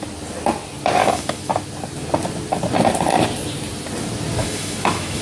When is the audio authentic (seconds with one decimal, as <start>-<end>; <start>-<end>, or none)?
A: 0.0-1.0; 1.5-4.4